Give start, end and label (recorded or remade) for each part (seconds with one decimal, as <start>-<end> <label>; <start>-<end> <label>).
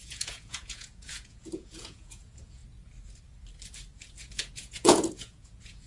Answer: 0.0-2.6 remade; 2.6-4.0 recorded; 4.0-5.9 remade